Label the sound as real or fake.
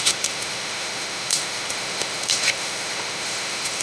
fake